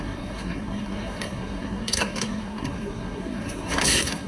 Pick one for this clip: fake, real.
fake